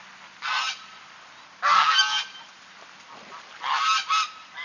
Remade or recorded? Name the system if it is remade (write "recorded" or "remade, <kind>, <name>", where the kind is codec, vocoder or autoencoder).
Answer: recorded